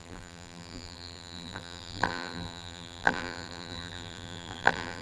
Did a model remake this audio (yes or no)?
yes